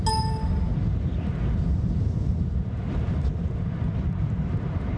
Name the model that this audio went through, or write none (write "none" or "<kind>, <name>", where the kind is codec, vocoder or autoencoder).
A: none